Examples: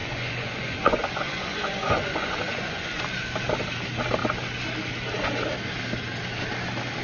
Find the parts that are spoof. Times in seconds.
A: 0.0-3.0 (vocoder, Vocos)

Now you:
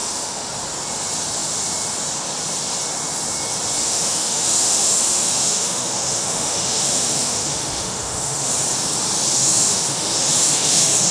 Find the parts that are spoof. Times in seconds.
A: 0.0-0.5 (autoencoder, DAC-VAE); 3.8-8.5; 9.4-11.1